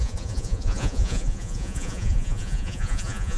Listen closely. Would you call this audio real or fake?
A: fake